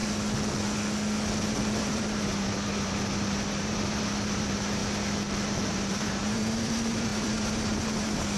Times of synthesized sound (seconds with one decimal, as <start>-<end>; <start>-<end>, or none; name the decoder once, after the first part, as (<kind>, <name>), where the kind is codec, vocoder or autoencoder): 1.8-4.8 (vocoder, BigVGAN v2); 5.7-8.4